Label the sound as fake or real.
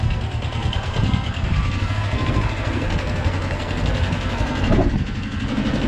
fake